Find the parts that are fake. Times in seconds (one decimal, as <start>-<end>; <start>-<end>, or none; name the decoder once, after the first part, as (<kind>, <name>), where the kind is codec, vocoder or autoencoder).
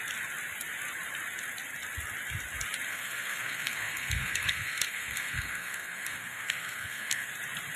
2.9-7.3 (codec, SNAC)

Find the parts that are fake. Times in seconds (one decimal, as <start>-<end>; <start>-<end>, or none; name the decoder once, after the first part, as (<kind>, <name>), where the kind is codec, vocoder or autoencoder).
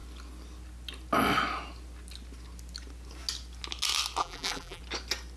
4.2-4.8 (vocoder, BigVGAN v2)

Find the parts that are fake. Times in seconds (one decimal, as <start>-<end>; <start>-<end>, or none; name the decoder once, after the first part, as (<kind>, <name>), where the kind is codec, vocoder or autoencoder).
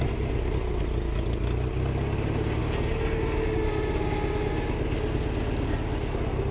none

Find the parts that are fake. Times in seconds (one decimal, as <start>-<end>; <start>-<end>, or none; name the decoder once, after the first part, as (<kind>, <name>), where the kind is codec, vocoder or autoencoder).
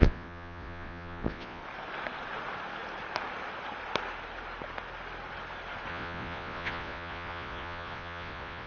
0.0-1.6 (vocoder, Vocos); 5.9-8.7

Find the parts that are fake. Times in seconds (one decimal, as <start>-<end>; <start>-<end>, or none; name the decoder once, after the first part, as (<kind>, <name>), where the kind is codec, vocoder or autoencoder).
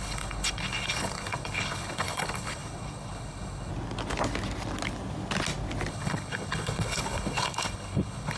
0.0-3.7 (codec, HILCodec); 5.9-8.4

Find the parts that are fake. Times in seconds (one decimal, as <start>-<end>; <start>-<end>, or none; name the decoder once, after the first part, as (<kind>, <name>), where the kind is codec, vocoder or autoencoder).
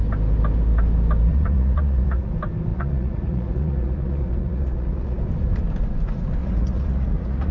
1.3-2.3 (vocoder, Vocos); 2.7-5.2; 6.4-7.5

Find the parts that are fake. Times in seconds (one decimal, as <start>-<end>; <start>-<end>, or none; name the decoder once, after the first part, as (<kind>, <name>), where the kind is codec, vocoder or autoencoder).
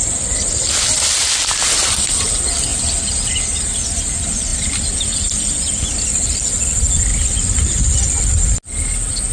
none